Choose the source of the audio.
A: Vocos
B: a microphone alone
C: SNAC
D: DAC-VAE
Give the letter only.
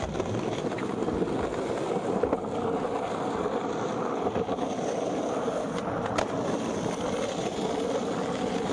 B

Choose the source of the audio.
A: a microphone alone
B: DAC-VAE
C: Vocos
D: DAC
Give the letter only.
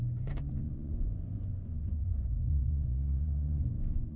C